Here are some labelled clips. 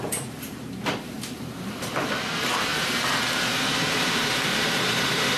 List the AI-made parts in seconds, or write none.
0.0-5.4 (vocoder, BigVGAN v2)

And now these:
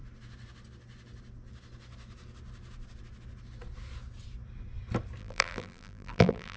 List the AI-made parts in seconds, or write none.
5.2-6.6 (vocoder, BigVGAN v2)

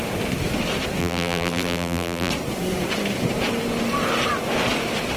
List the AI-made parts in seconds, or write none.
1.0-2.3 (vocoder, BigVGAN v2)

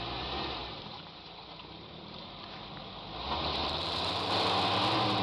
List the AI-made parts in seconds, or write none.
0.6-2.6 (vocoder, BigVGAN v2); 3.6-4.3

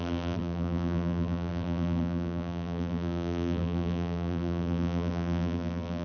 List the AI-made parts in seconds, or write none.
0.0-6.0 (vocoder, BigVGAN v2)